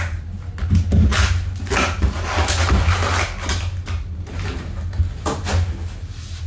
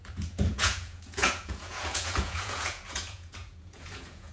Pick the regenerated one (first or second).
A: second